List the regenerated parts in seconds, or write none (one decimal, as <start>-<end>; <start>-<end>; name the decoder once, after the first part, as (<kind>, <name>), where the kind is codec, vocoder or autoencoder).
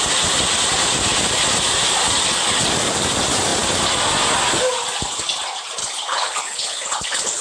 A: 5.8-7.4 (codec, HILCodec)